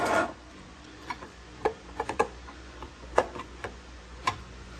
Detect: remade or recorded remade